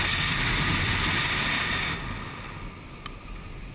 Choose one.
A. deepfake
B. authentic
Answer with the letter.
B